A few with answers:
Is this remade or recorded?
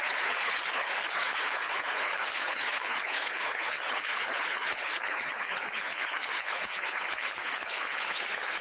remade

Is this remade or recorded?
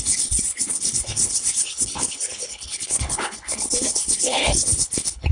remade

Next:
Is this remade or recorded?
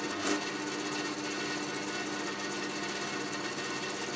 recorded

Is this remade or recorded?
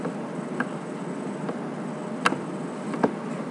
recorded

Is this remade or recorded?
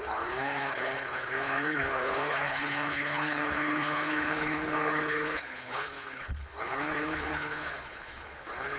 remade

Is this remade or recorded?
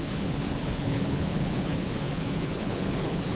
remade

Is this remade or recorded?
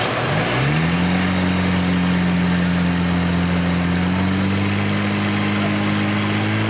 recorded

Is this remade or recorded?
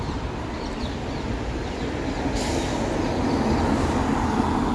recorded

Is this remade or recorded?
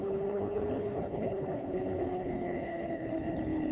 remade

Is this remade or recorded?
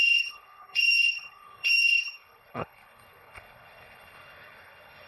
remade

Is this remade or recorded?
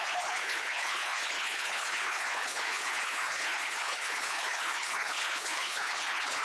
remade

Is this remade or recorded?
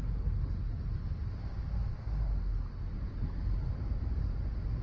recorded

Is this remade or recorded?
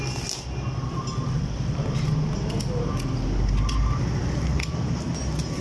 recorded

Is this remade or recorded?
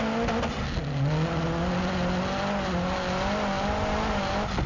recorded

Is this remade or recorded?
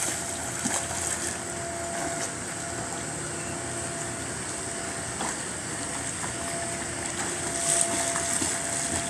recorded